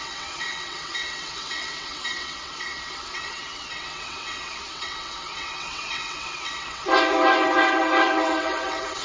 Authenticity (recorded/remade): remade